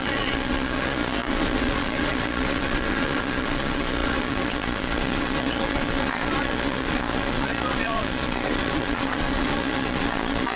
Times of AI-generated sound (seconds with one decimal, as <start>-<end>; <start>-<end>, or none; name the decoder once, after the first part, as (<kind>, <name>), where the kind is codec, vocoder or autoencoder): 0.0-10.6 (vocoder, Vocos)

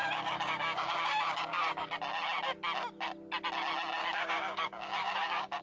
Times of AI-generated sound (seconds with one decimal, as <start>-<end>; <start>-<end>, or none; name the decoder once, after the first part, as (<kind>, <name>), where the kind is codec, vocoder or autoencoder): 0.0-1.9 (codec, DAC); 4.0-5.6

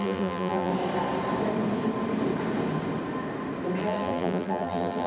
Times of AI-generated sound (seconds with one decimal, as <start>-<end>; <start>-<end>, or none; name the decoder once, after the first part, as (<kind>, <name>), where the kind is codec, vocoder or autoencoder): 0.0-0.7 (vocoder, BigVGAN v2); 3.8-5.1

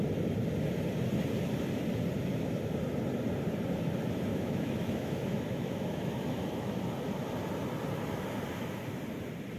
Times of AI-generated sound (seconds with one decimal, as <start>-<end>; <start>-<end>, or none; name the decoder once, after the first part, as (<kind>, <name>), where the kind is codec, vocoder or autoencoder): 4.3-6.8 (autoencoder, DAC-VAE)

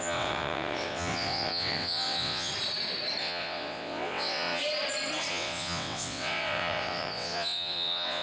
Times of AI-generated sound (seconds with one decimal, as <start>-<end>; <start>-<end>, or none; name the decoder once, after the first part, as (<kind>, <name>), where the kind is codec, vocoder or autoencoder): 0.0-2.5 (vocoder, WaveNeXt); 3.2-4.6; 5.3-8.2